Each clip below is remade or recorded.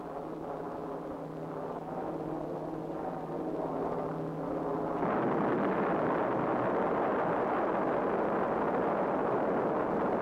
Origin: recorded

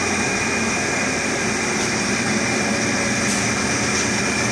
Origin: recorded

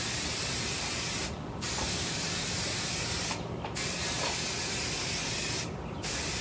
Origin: remade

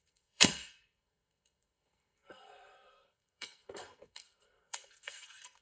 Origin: remade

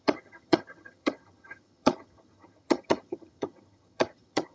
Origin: remade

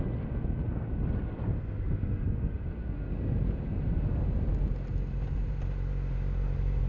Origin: recorded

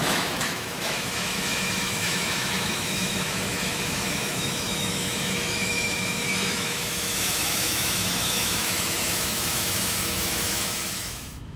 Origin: remade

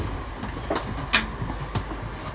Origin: recorded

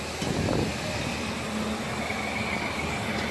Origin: recorded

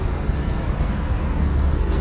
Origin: remade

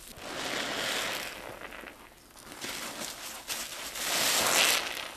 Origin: recorded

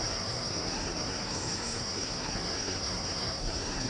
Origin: remade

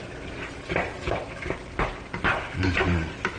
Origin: recorded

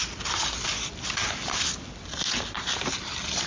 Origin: recorded